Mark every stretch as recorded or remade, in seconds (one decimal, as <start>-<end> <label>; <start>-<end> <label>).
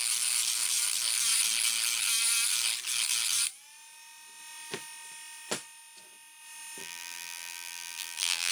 0.0-6.8 recorded; 6.8-8.5 remade